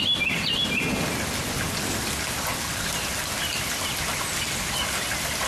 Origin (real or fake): real